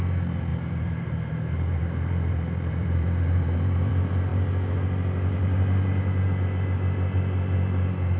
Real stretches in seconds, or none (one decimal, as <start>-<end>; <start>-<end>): 0.0-0.5; 3.9-8.2